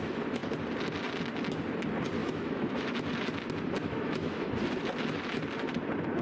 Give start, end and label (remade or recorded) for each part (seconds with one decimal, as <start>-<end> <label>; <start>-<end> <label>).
0.0-2.2 recorded; 2.2-3.0 remade; 3.0-3.8 recorded; 3.8-4.5 remade; 4.5-6.2 recorded